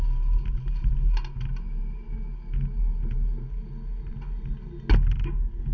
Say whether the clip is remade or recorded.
recorded